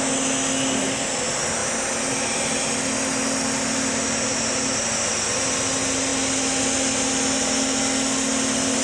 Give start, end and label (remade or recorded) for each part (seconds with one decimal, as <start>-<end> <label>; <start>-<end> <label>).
0.0-8.8 recorded